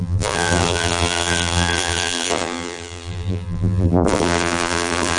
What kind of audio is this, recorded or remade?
remade